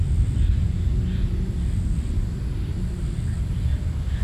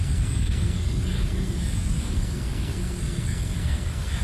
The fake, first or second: second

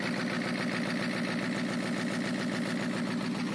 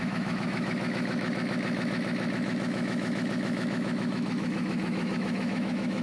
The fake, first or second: second